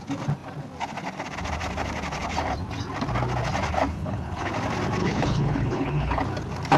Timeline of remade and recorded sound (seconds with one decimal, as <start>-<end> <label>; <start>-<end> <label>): 0.0-3.9 recorded; 3.9-4.5 remade; 4.5-5.0 recorded; 5.0-6.2 remade; 6.2-6.8 recorded